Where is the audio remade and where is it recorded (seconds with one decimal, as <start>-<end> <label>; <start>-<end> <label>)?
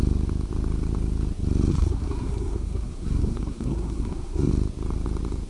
0.0-1.7 recorded; 1.7-4.5 remade; 4.5-5.5 recorded